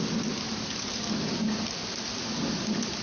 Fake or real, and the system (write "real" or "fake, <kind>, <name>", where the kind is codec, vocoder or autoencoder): real